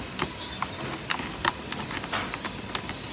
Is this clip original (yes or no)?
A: yes